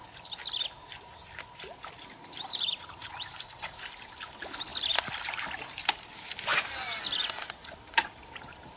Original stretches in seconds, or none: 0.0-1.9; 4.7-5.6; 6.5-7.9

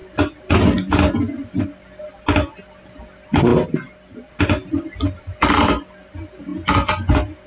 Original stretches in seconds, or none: 0.0-7.5

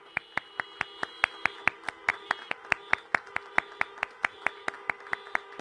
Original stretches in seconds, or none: 0.0-5.6

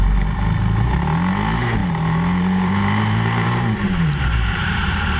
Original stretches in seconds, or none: 0.0-1.8

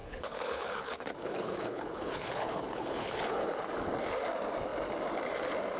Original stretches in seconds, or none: 3.5-5.8

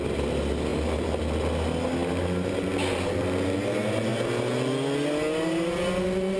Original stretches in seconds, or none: 0.0-6.4